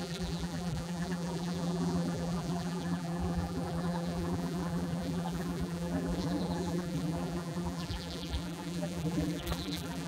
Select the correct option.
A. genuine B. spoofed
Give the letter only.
B